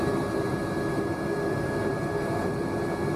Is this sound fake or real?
fake